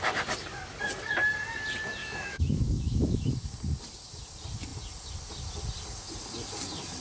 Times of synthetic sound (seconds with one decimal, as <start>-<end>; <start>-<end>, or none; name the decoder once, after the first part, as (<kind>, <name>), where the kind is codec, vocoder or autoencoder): 2.0-3.3 (autoencoder, DAC-VAE)